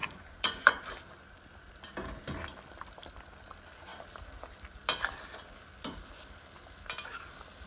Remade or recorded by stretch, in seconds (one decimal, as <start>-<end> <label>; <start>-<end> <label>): 0.0-0.8 remade; 0.8-7.7 recorded